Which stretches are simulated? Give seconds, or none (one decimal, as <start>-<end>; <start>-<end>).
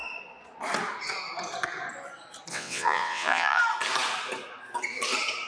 2.5-3.6